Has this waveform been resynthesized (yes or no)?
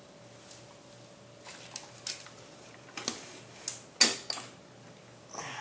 no